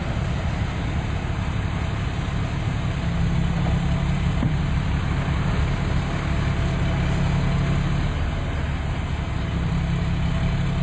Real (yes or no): yes